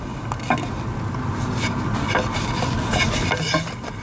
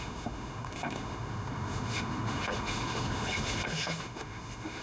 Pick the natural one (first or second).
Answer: first